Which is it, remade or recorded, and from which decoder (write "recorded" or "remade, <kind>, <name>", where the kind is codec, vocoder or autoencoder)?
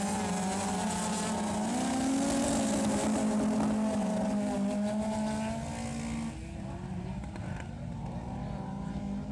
recorded